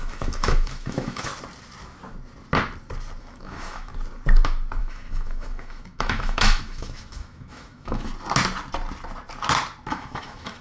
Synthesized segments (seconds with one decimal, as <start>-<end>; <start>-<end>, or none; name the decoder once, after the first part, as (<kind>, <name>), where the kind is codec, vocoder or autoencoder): 0.0-1.3 (autoencoder, DAC-VAE); 3.2-3.9; 4.8-8.1; 9.9-10.6